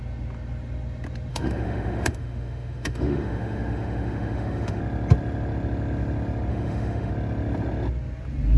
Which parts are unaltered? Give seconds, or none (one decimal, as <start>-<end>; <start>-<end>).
0.0-1.3; 4.8-6.5; 7.1-8.6